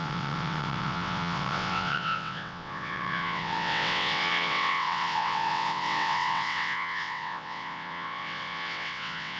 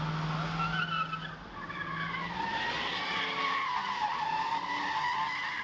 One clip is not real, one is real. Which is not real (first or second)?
first